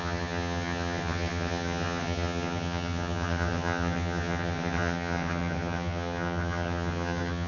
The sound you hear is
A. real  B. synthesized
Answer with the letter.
B